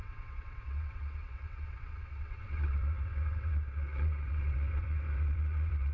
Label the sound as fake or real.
fake